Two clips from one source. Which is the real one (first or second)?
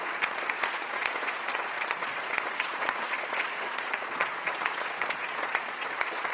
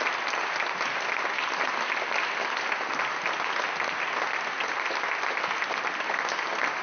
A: second